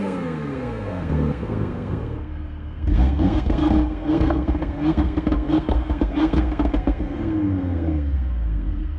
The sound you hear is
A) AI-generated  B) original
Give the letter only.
A